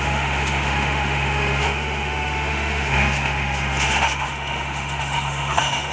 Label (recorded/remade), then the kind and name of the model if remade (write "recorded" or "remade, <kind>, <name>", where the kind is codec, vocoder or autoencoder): remade, autoencoder, DAC-VAE